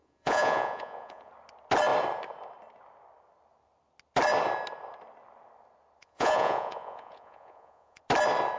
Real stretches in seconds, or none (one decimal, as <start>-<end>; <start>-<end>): 1.3-6.0; 8.0-8.6